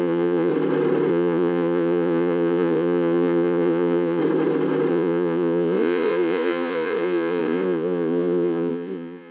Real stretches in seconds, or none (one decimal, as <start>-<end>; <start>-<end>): 0.5-1.1; 4.2-4.9